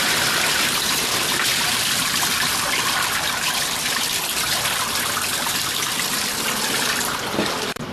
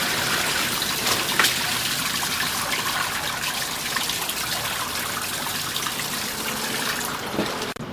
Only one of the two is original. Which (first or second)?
second